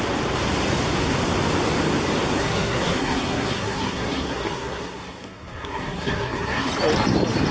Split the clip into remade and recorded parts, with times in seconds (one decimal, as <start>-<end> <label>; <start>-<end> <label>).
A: 0.0-2.4 recorded; 2.4-6.7 remade; 6.7-7.5 recorded

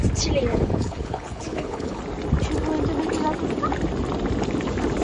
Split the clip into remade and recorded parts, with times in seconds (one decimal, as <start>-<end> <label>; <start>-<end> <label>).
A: 0.0-0.5 recorded; 0.5-2.0 remade; 2.0-5.0 recorded

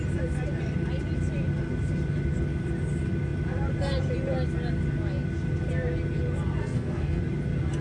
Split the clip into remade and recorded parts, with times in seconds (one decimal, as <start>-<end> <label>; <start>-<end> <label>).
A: 0.0-6.6 recorded; 6.6-7.2 remade; 7.2-7.8 recorded

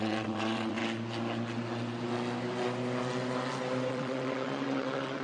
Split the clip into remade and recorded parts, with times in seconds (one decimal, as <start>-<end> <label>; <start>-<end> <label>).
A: 0.0-0.8 remade; 0.8-3.9 recorded; 3.9-5.2 remade